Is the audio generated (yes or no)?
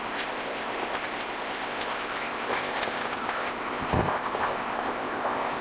yes